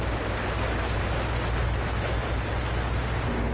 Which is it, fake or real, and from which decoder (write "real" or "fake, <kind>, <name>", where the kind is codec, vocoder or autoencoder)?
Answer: real